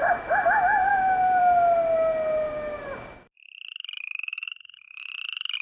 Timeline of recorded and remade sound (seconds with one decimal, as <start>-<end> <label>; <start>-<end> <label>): 0.0-5.6 recorded